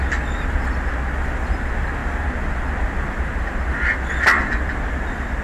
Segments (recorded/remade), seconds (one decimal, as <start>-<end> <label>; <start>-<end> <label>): 0.0-5.4 recorded